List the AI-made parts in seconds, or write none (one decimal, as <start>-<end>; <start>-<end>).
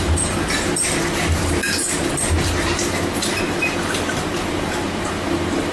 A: 0.0-5.7